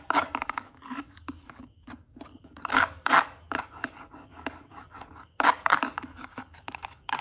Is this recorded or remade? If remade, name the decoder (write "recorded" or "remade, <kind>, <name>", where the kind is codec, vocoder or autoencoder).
remade, codec, DAC